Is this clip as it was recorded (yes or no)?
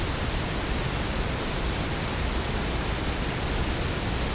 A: yes